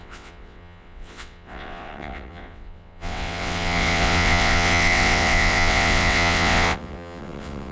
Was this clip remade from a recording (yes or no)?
yes